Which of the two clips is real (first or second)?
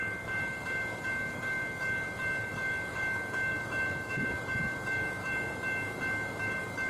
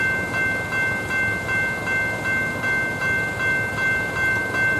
second